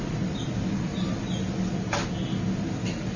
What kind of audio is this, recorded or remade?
recorded